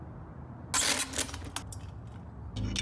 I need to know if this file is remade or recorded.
recorded